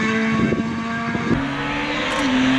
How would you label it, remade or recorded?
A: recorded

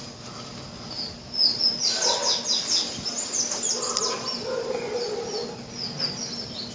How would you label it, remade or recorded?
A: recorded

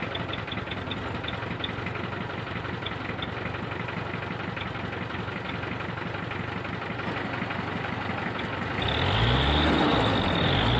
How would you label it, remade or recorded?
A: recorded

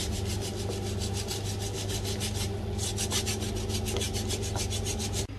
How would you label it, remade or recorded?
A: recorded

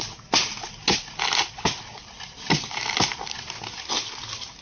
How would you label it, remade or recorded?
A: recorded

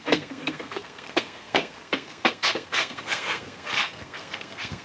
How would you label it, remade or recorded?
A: remade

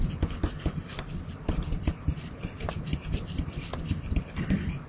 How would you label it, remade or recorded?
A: remade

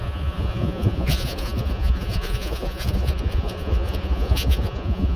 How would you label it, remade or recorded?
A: remade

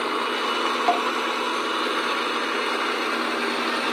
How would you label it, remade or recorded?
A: recorded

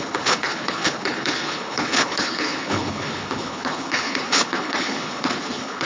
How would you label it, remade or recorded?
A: remade